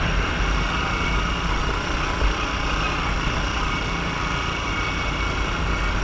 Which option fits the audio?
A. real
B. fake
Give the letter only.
A